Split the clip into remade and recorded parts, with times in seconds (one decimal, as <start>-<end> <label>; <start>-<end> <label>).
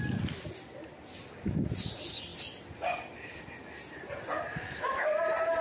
0.0-4.5 recorded; 4.5-5.1 remade; 5.1-5.6 recorded